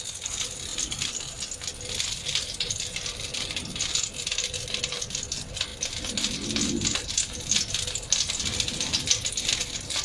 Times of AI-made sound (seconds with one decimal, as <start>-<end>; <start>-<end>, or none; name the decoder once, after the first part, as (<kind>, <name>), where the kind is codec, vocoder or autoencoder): none